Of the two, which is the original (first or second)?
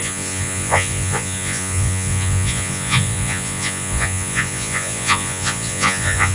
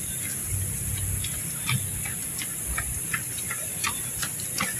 second